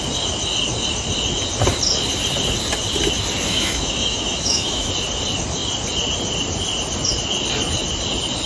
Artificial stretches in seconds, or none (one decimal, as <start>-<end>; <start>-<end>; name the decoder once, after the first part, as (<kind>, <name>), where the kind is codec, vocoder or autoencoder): 3.5-4.9 (autoencoder, DAC-VAE)